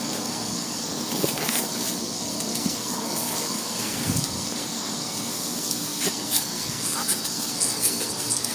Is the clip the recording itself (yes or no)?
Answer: no